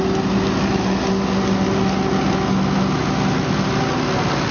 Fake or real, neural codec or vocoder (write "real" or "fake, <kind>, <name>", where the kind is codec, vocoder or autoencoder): real